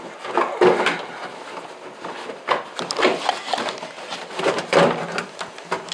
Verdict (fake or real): real